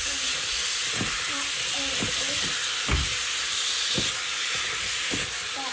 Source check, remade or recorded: recorded